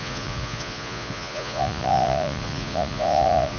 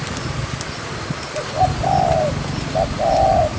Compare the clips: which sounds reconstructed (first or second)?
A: first